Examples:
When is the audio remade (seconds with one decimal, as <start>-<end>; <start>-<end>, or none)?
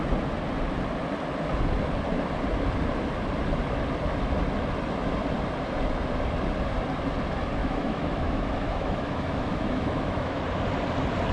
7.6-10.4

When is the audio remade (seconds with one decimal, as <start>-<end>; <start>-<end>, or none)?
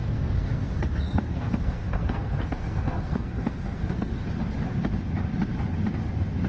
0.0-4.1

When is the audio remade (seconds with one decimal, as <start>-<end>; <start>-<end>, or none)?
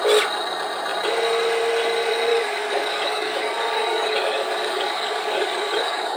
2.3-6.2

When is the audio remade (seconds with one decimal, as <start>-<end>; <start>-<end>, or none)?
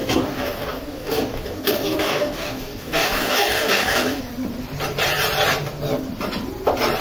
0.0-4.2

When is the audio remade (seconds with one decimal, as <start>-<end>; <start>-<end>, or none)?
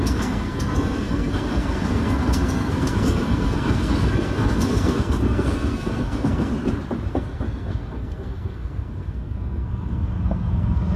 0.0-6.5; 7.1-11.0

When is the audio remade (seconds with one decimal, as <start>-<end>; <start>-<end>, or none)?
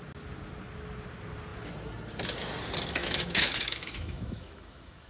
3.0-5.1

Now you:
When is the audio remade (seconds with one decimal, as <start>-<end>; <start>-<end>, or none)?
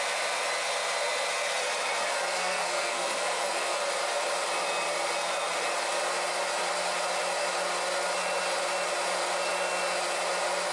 2.4-3.8